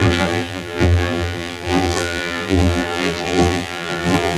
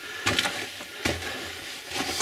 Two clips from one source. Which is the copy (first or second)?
first